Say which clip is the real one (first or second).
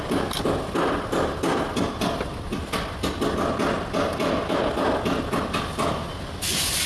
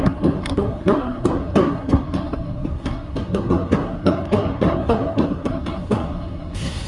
first